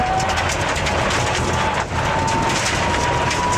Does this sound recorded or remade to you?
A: recorded